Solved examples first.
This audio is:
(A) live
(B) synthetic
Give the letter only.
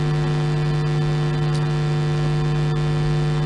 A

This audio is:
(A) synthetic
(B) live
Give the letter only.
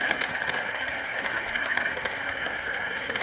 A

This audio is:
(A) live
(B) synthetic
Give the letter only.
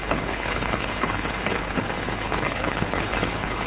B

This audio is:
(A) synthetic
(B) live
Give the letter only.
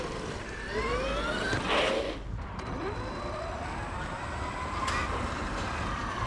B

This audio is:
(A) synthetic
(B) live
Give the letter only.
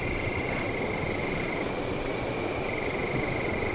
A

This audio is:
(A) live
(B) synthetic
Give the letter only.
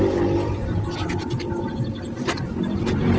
B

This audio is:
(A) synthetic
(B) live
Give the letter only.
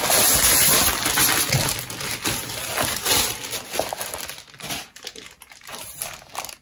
B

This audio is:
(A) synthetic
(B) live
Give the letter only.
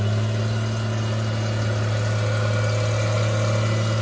B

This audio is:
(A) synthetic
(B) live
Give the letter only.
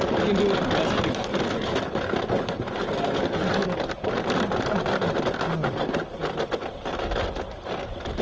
B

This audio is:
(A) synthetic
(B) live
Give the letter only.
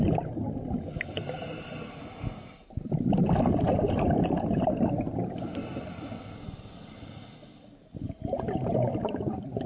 B